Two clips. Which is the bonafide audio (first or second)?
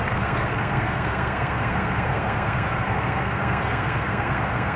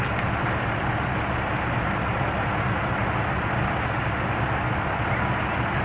second